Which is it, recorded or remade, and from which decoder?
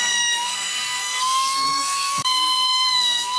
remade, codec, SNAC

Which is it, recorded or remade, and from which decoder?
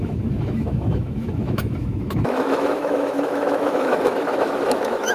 remade, autoencoder, DAC-VAE